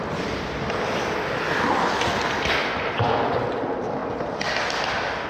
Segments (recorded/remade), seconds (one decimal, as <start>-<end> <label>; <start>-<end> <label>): 0.0-2.6 remade; 2.6-3.6 recorded; 3.6-4.0 remade; 4.0-5.3 recorded